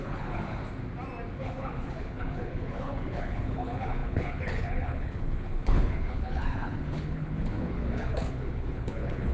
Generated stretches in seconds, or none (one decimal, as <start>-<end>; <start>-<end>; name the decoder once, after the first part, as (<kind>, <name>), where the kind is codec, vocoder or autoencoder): 0.0-0.6 (codec, HILCodec); 1.3-9.3